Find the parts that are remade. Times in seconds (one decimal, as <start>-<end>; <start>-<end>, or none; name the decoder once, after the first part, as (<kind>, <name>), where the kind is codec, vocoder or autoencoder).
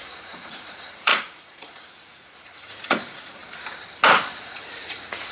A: 0.0-3.4 (vocoder, Vocos); 4.4-5.3